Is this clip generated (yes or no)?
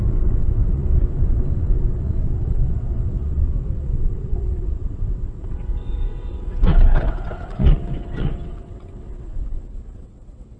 yes